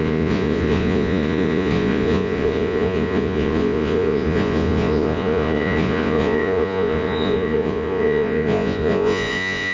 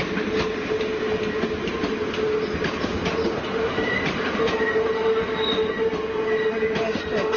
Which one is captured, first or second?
second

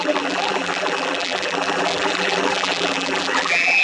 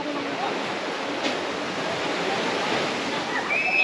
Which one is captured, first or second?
second